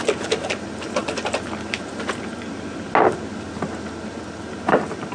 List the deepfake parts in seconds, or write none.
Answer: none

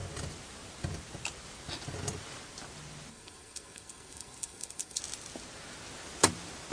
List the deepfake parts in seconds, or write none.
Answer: 3.1-5.0 (codec, SNAC)

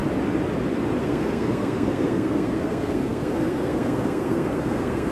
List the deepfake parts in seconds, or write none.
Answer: 1.0-5.1 (codec, SNAC)

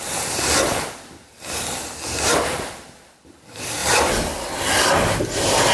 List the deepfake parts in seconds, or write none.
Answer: none